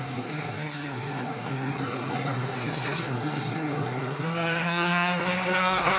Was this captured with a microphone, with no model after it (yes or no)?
no